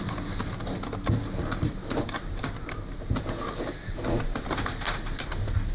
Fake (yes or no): no